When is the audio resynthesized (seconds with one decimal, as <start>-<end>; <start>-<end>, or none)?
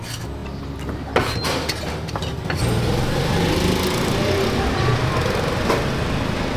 none